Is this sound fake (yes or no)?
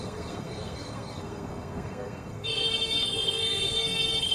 yes